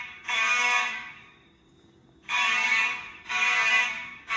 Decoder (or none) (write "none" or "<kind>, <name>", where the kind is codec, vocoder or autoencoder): codec, DAC